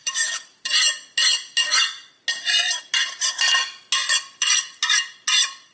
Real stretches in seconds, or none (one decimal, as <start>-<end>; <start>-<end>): 0.0-4.0; 4.6-5.7